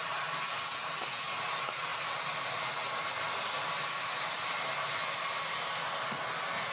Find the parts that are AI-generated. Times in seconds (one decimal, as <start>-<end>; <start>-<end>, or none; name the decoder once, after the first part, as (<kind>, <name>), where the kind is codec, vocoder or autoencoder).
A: 1.9-2.7 (vocoder, BigVGAN v2)